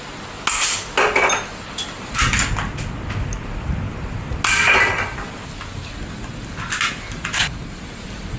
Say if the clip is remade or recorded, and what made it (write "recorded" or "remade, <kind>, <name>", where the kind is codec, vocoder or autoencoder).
recorded